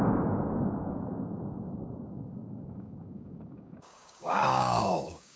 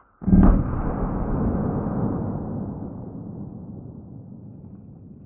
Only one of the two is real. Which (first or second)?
second